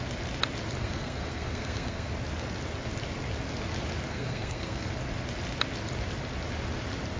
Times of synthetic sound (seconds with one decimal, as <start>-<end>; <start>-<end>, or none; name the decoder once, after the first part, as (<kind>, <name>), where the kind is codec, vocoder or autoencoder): 0.8-2.1 (codec, SNAC); 4.1-4.9